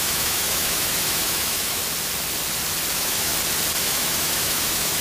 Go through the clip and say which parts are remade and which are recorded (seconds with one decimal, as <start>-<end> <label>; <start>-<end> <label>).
0.0-1.8 remade; 1.8-2.9 recorded; 2.9-3.3 remade; 3.3-3.8 recorded; 3.8-5.0 remade